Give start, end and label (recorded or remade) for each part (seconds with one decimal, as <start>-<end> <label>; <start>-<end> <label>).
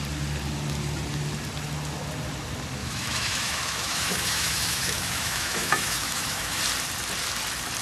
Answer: 0.0-2.8 recorded; 2.8-6.6 remade; 6.6-7.8 recorded